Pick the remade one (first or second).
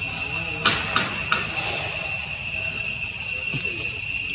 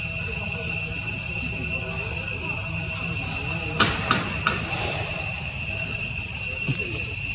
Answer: second